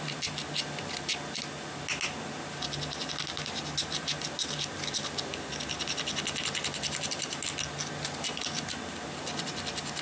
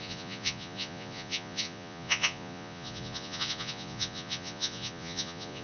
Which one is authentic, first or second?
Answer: first